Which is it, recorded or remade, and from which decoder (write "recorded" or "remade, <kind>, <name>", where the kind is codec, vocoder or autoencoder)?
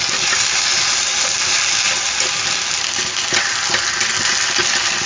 recorded